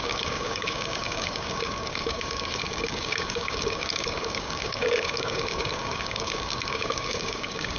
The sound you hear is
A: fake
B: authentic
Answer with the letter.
A